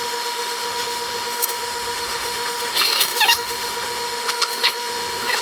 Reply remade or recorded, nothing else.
remade